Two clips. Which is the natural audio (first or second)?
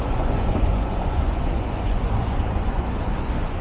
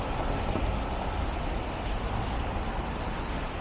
second